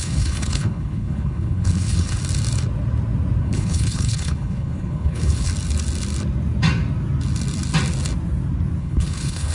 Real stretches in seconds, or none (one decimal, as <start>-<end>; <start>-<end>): 2.2-3.4; 5.5-8.8